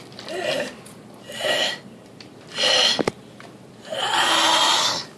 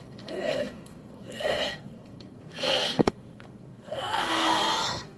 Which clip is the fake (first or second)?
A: second